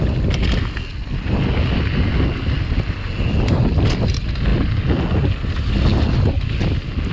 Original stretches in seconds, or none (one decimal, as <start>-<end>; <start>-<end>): 0.0-7.1